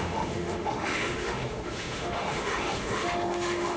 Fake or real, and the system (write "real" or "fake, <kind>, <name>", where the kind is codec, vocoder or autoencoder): fake, autoencoder, DAC-VAE